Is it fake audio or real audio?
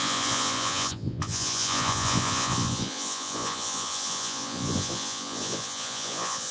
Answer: fake